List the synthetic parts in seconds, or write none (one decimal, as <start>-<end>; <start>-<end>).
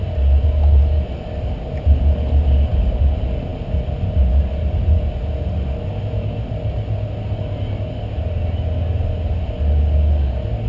none